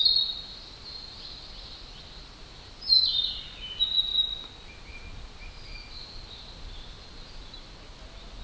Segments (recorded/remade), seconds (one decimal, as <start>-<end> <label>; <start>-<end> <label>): 0.0-8.4 recorded